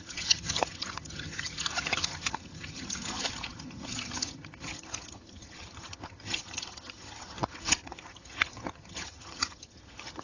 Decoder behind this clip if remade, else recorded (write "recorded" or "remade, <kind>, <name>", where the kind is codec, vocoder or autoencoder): remade, vocoder, HiFi-GAN